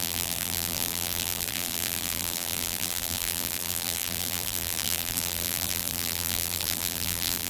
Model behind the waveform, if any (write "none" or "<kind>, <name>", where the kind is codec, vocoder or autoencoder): vocoder, BigVGAN v2